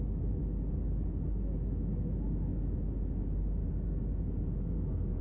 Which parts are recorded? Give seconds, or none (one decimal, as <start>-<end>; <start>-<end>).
0.4-1.1; 2.5-3.2; 3.6-4.4